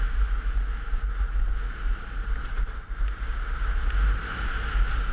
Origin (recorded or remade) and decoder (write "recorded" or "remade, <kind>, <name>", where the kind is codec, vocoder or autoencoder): recorded